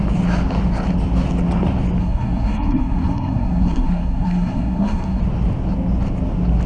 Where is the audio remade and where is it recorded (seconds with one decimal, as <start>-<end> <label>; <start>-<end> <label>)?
0.0-2.0 recorded; 2.0-5.2 remade; 5.2-6.7 recorded